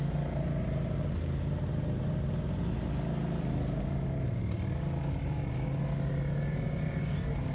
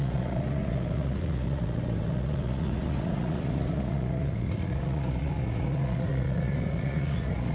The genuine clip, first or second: first